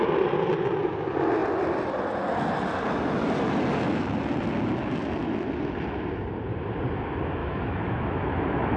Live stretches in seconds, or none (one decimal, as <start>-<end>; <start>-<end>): 0.0-7.4